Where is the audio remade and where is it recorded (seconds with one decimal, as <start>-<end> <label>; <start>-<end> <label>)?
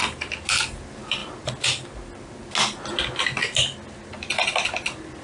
0.0-5.2 recorded